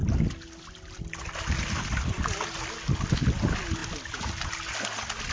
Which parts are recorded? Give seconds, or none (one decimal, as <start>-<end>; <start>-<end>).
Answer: 0.0-5.3